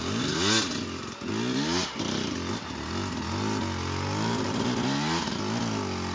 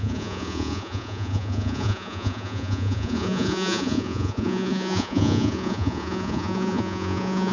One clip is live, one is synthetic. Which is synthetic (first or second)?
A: second